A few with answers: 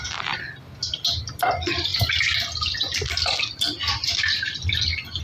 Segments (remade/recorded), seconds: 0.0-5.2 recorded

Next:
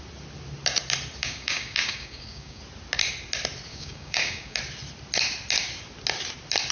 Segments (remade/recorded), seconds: 0.0-1.2 recorded; 1.2-2.6 remade; 2.6-3.7 recorded; 3.7-4.6 remade; 4.6-6.7 recorded